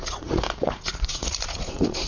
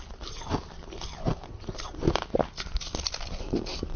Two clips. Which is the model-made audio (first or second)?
first